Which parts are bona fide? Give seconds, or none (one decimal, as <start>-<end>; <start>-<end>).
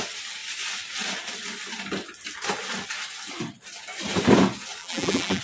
0.0-4.8